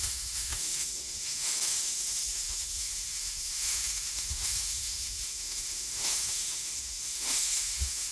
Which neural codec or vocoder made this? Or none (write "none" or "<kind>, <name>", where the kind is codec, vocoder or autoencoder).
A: autoencoder, DAC-VAE